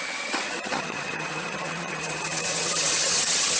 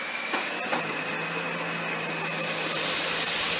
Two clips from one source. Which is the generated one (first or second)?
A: first